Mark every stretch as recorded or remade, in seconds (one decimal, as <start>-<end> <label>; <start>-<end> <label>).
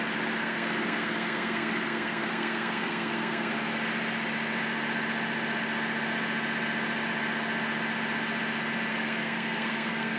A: 0.0-0.4 recorded; 0.4-3.5 remade; 3.5-8.9 recorded; 8.9-10.2 remade